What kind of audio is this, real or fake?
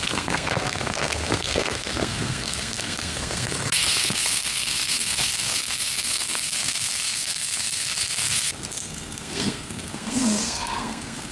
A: fake